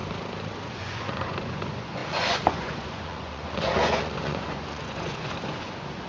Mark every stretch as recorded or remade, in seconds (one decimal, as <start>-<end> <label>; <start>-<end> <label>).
0.0-0.7 recorded; 0.7-6.1 remade